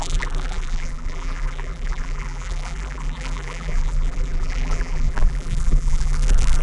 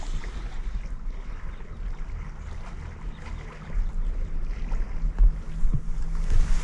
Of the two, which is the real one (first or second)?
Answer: second